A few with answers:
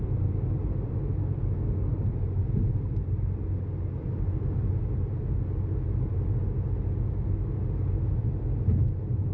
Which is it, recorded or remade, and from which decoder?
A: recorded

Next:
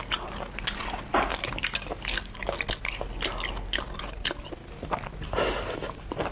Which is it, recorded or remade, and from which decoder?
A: recorded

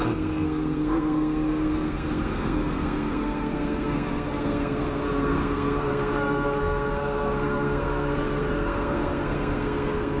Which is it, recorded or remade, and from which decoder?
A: remade, codec, SNAC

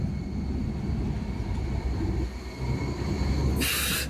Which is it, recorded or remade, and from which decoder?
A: recorded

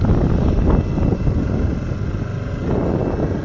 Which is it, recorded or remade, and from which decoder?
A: recorded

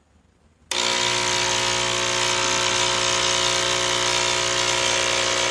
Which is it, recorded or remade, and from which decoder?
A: recorded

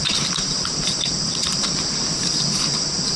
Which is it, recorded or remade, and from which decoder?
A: remade, vocoder, BigVGAN v2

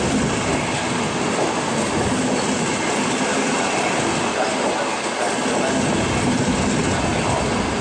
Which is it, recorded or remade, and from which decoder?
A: recorded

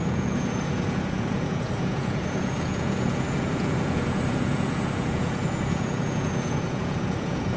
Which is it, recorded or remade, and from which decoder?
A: remade, vocoder, Vocos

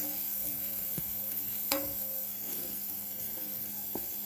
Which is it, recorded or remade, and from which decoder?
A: remade, codec, SNAC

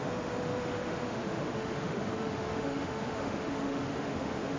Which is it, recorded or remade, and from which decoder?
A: remade, autoencoder, DAC-VAE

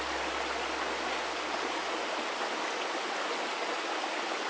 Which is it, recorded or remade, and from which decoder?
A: recorded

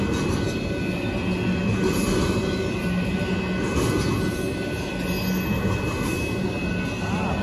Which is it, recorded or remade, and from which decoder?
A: recorded